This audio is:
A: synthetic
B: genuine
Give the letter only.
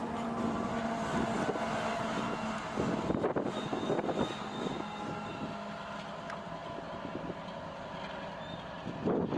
B